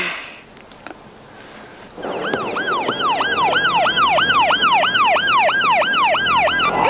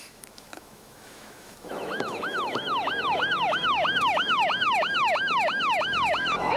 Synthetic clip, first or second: second